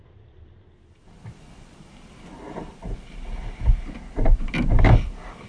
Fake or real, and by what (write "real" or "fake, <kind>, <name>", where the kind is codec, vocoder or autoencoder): real